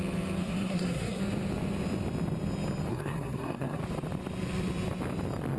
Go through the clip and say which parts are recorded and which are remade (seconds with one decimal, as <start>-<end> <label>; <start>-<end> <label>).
0.0-0.4 recorded; 0.4-1.2 remade; 1.2-2.9 recorded; 2.9-3.8 remade; 3.8-5.6 recorded